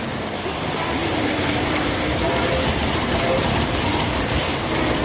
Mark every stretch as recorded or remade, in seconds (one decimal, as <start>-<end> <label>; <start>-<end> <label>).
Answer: 0.0-1.0 recorded; 1.0-2.0 remade; 2.0-2.8 recorded; 2.8-4.5 remade; 4.5-5.0 recorded